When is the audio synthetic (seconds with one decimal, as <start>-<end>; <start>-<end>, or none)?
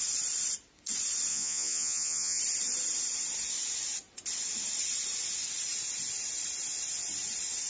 1.3-2.4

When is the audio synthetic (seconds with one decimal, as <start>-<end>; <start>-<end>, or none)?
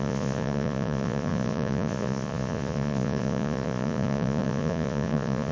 0.0-5.5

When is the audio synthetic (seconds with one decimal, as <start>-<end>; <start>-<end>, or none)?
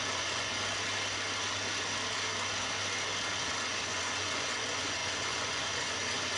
0.0-0.5; 3.4-6.4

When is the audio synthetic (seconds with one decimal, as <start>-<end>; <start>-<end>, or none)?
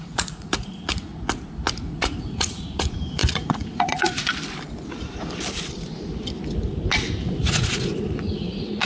0.0-1.1; 1.8-4.3; 7.4-8.9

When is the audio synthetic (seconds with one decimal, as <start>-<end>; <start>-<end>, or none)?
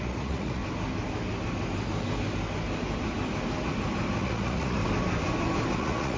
0.0-0.6; 4.2-4.8; 5.7-6.2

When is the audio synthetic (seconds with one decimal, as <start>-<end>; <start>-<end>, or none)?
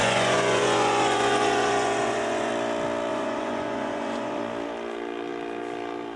0.0-2.5; 3.1-4.4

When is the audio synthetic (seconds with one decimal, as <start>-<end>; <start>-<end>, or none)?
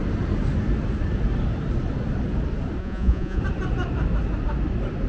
2.8-3.4